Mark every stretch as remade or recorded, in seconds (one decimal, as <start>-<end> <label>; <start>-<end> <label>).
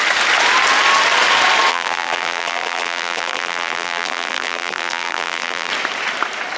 0.0-1.7 recorded; 1.7-5.7 remade; 5.7-6.6 recorded